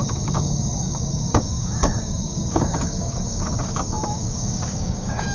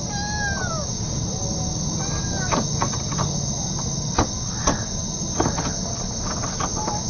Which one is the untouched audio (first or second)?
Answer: second